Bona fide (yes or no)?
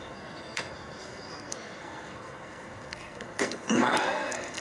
no